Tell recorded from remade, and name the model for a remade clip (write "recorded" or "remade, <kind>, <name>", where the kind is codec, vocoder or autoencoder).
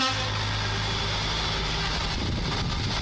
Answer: recorded